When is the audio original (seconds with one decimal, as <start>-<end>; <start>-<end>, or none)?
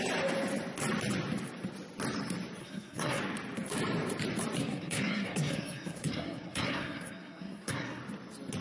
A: 0.0-2.6; 3.2-4.6; 8.0-8.6